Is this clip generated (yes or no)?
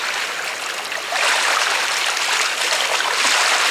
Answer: no